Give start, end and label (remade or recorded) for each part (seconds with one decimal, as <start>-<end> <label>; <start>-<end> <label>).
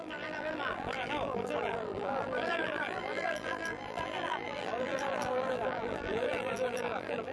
0.0-7.3 remade